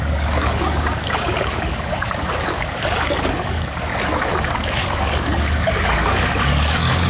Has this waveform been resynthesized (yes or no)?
yes